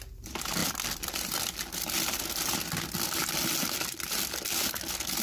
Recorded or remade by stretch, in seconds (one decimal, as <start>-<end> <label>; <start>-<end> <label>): 0.0-0.6 recorded; 0.6-1.9 remade; 1.9-5.2 recorded